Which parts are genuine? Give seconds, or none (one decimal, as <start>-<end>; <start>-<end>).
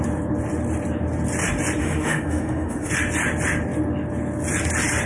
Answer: 0.0-1.8; 2.9-5.1